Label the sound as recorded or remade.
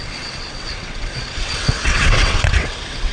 remade